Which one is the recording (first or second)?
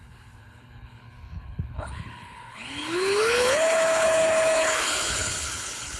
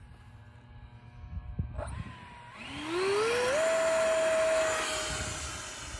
second